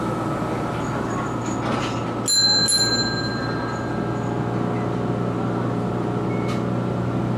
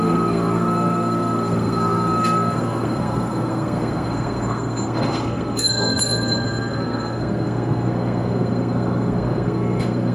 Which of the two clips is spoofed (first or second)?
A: second